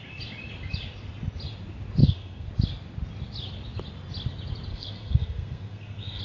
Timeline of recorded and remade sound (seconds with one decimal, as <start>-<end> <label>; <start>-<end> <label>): 0.0-2.0 recorded; 2.0-2.5 remade; 2.5-4.7 recorded; 4.7-6.2 remade